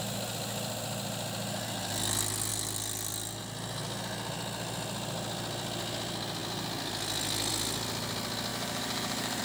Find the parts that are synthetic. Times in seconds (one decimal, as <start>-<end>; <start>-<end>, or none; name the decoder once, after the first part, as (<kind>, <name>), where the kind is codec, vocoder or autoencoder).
8.5-9.4 (vocoder, BigVGAN v2)